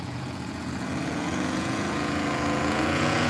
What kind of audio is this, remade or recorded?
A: remade